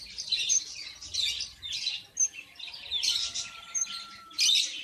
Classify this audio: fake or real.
real